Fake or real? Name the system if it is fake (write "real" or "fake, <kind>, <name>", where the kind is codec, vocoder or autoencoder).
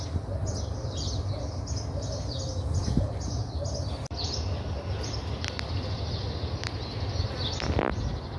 real